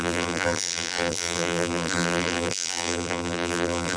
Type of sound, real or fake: fake